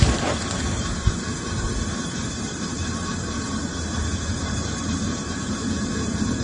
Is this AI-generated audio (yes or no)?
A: yes